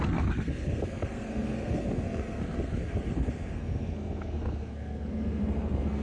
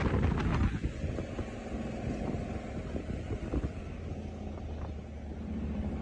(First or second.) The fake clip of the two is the first